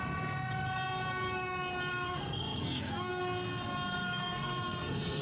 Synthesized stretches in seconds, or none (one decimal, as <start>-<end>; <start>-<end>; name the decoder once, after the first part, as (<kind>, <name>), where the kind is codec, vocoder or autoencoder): 1.9-3.1 (codec, SNAC); 4.0-5.2